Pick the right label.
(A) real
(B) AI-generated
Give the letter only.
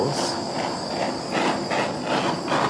A